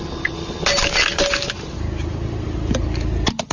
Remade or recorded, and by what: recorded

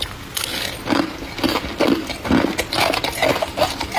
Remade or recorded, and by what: recorded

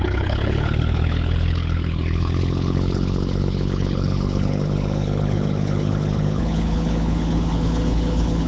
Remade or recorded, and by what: remade, codec, HILCodec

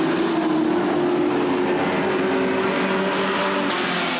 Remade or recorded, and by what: recorded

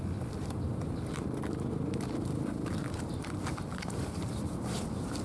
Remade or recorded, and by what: remade, vocoder, BigVGAN v2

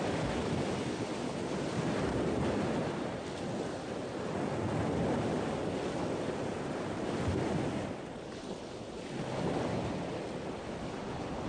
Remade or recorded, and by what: recorded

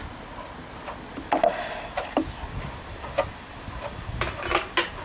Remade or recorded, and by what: recorded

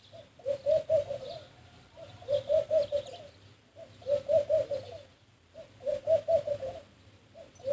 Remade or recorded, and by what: recorded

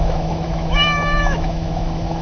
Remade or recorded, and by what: remade, autoencoder, DAC-VAE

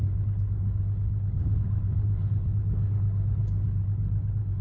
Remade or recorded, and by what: remade, codec, HILCodec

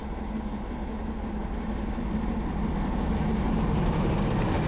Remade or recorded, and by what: recorded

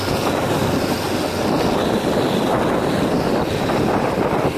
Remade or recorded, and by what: recorded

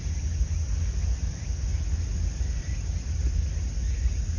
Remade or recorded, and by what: recorded